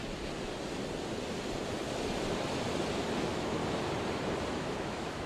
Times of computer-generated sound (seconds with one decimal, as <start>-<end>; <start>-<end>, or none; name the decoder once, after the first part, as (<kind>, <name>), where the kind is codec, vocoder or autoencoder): 3.2-3.6 (autoencoder, DAC-VAE); 4.5-5.3